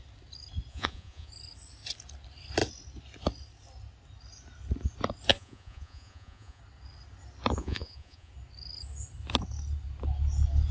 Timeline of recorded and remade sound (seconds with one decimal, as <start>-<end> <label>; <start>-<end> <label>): 0.0-0.7 recorded; 0.7-1.3 remade; 1.3-5.3 recorded; 5.3-6.6 remade; 6.6-7.6 recorded; 7.6-8.3 remade; 8.3-10.7 recorded